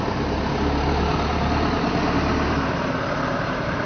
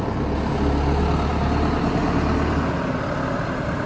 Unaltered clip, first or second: second